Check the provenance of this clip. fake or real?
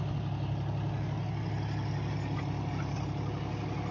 real